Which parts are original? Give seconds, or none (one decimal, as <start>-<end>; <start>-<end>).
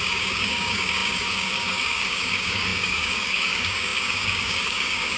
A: none